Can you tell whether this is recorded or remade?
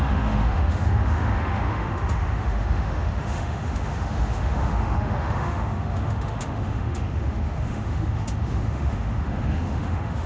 remade